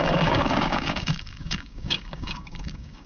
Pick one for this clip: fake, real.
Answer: fake